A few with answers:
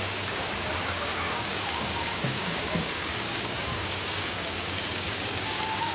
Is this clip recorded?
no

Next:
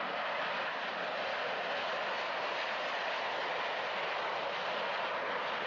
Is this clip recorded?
yes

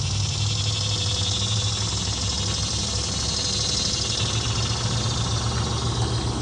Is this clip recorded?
yes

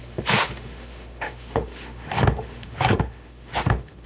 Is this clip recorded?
no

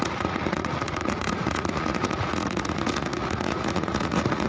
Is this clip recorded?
no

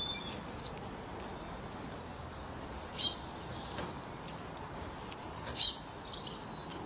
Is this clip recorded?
yes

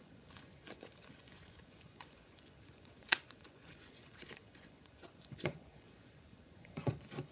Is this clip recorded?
no